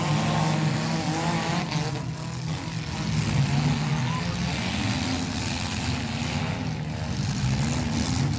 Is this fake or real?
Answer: real